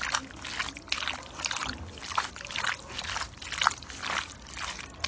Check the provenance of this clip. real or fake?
real